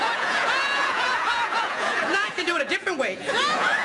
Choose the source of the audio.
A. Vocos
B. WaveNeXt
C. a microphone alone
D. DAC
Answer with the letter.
A